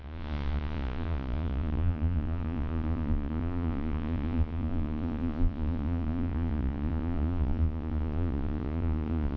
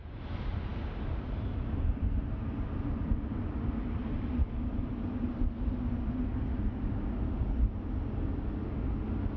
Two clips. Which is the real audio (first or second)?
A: second